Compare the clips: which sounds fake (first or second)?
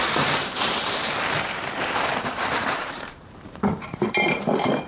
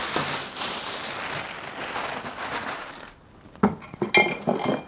first